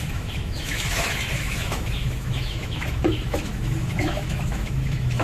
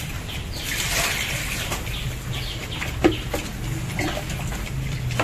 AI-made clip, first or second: first